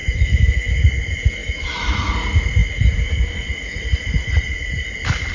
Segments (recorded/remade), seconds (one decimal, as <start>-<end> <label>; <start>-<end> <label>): 0.0-0.7 remade; 0.7-1.4 recorded; 1.4-2.1 remade; 2.1-5.3 recorded